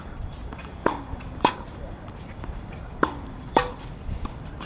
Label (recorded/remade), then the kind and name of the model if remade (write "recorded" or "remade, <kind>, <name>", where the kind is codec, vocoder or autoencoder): remade, vocoder, BigVGAN v2